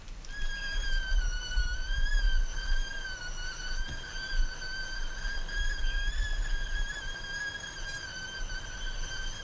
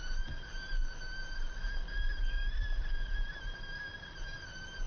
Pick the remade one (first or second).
second